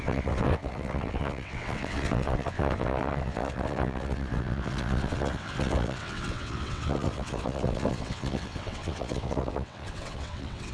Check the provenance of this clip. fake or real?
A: fake